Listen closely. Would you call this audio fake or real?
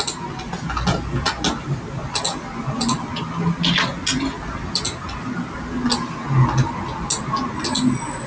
real